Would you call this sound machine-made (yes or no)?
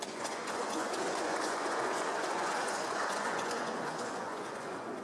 yes